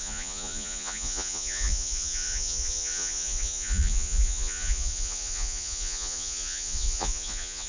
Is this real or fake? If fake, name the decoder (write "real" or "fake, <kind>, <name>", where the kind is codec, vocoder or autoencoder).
fake, vocoder, Vocos